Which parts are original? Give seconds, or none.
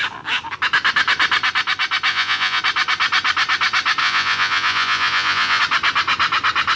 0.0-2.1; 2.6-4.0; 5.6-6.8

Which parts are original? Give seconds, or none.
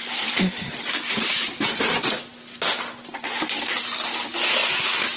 0.0-5.2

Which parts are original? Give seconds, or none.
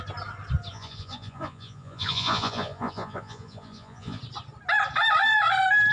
0.0-0.7; 4.2-5.9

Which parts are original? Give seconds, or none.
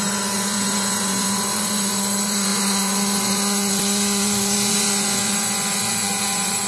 none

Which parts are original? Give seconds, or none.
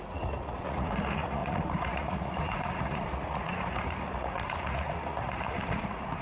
none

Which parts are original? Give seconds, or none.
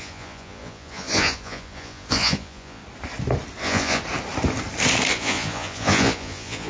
2.8-3.6; 4.0-5.1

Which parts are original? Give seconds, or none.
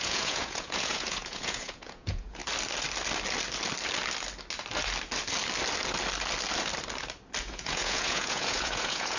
2.4-7.4